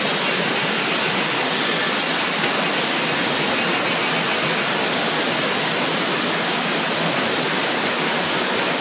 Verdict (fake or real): real